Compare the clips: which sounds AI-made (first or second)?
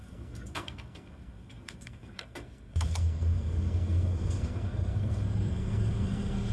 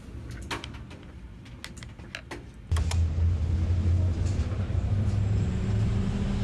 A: first